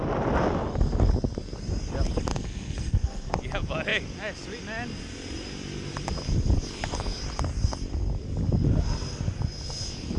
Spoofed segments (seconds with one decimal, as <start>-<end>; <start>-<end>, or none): 2.3-3.4